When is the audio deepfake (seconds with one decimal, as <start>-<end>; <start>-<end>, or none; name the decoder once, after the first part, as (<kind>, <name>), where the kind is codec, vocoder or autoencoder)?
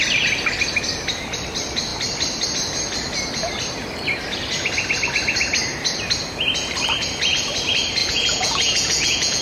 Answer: 8.0-9.4 (vocoder, Vocos)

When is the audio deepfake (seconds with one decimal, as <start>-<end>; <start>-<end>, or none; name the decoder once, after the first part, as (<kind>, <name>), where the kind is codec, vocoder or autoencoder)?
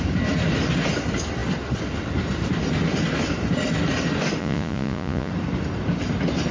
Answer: 4.4-5.3 (vocoder, Vocos)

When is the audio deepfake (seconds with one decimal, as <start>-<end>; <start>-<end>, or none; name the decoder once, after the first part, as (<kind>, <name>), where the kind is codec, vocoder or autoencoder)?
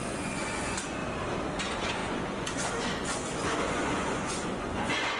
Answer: 0.0-1.0 (vocoder, Vocos); 1.6-5.2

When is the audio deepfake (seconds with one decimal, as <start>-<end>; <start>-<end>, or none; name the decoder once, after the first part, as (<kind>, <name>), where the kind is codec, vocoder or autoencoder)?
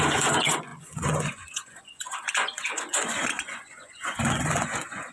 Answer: 0.0-5.1 (vocoder, Vocos)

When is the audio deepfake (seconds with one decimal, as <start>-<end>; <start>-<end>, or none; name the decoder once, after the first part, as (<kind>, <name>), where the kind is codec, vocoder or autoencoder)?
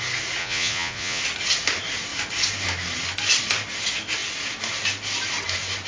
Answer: 0.4-1.2 (vocoder, Vocos)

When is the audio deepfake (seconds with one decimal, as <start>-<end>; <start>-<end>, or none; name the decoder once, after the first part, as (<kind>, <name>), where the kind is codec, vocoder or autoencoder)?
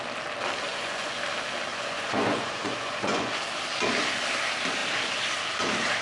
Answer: 0.7-1.2 (vocoder, Vocos); 1.7-3.3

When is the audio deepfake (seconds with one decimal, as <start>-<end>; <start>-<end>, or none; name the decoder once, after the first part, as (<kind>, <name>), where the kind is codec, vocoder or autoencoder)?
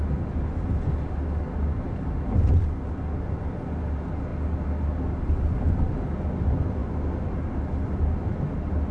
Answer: none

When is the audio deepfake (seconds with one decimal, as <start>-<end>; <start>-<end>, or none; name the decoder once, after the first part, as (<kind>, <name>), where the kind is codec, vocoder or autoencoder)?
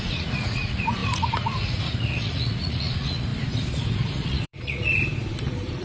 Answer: 0.0-3.3 (vocoder, Vocos); 4.1-4.9